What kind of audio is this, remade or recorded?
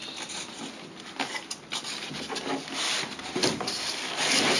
recorded